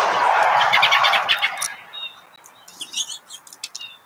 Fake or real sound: real